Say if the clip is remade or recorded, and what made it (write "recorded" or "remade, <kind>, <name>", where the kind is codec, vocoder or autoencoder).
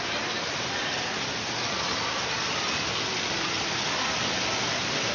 recorded